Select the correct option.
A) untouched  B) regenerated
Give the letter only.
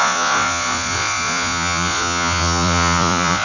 B